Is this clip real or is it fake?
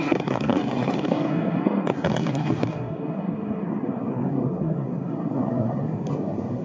fake